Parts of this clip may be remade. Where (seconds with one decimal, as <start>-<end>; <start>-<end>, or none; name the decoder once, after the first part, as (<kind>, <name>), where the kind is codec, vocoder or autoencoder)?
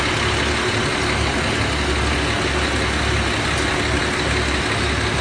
none